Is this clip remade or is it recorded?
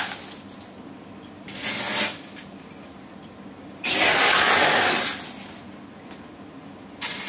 recorded